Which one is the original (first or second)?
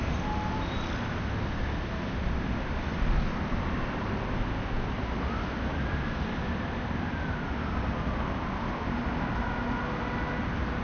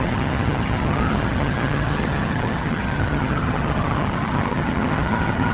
first